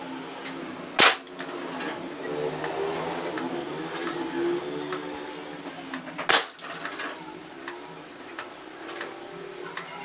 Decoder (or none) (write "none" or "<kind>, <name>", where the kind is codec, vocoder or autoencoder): none